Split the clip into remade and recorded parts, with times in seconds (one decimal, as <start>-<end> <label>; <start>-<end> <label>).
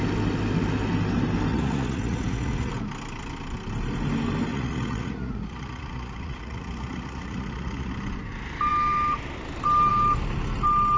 0.0-1.5 recorded; 1.5-2.7 remade; 2.7-4.5 recorded; 4.5-7.9 remade; 7.9-11.0 recorded